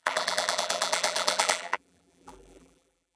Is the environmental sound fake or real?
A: fake